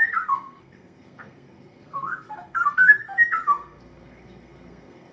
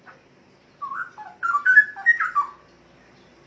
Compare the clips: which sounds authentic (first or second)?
second